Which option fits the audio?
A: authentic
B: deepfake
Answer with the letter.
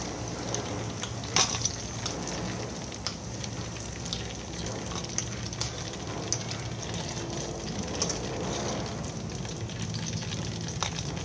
A